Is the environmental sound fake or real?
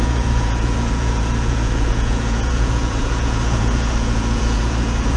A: fake